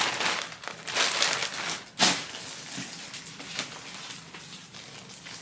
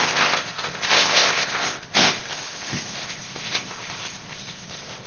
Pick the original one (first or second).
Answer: first